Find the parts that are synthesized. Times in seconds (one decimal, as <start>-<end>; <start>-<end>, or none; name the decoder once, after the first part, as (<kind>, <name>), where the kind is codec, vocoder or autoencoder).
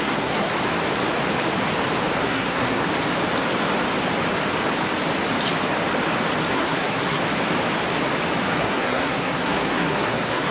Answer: 0.0-0.5 (codec, SNAC); 2.2-2.9; 6.5-7.2; 8.6-10.5